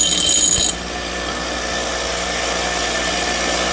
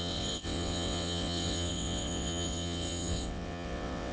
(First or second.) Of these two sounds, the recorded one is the first